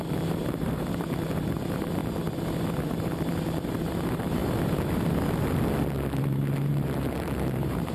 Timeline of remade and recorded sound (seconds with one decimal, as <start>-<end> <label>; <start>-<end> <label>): 0.0-2.0 remade; 2.0-2.8 recorded; 2.8-4.4 remade; 4.4-6.2 recorded; 6.2-7.9 remade